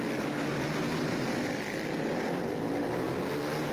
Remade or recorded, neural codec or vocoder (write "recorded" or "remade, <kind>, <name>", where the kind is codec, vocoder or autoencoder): recorded